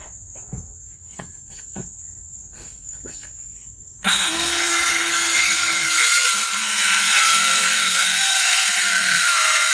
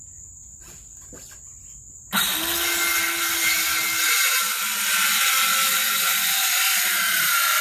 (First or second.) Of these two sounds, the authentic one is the second